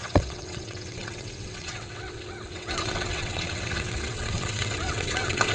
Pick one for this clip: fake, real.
fake